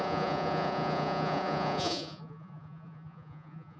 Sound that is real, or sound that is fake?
fake